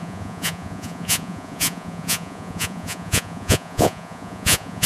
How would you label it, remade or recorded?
remade